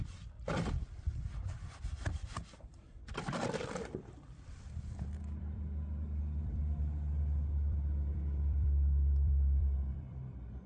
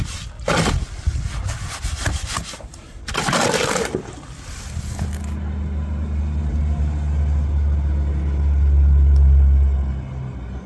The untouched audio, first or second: second